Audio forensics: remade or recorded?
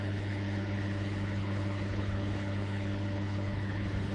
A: remade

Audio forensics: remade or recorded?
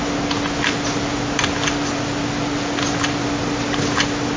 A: recorded